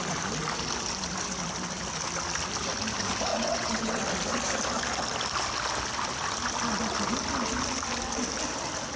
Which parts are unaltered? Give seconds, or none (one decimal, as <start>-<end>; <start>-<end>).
0.0-3.3; 4.0-9.0